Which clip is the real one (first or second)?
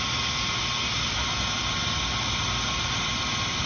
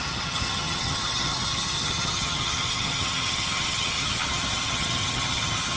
first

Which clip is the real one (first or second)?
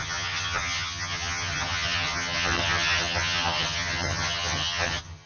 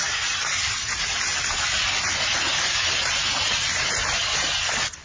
second